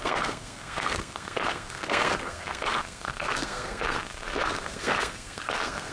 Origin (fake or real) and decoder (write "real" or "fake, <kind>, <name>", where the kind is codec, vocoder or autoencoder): fake, codec, SNAC